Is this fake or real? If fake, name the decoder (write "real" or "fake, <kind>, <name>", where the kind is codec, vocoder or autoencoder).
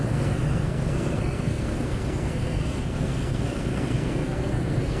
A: fake, codec, SNAC